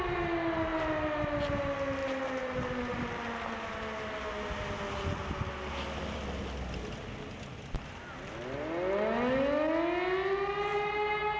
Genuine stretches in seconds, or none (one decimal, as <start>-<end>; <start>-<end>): 0.0-11.4